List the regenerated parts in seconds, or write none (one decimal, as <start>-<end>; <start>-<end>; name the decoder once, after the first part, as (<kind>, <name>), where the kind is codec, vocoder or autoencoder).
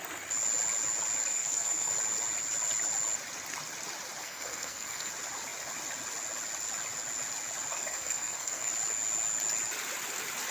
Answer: 1.3-1.9 (codec, SNAC); 4.2-5.1; 7.7-8.7